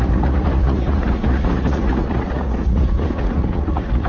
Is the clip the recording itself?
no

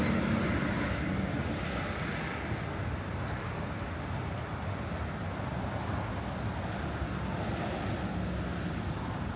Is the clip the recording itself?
yes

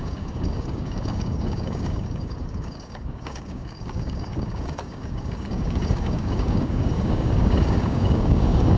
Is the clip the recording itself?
no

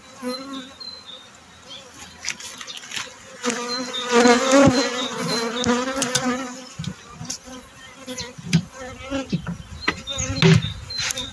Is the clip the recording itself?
yes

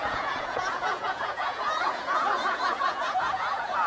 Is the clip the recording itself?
no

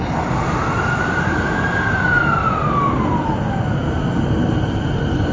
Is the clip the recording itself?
yes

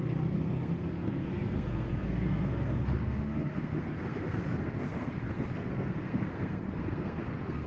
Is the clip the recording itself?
no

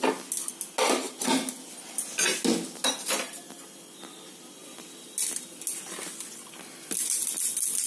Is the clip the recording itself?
yes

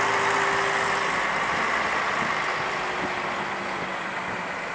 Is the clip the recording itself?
yes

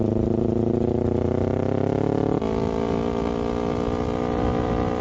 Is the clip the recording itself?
yes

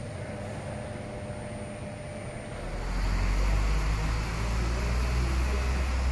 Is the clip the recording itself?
yes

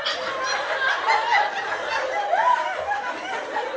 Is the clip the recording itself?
yes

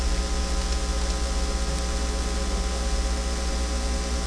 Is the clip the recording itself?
yes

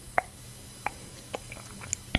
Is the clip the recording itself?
yes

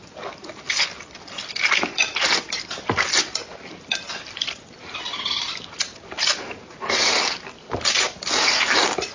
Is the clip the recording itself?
yes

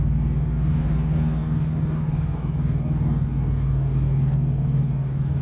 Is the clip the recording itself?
no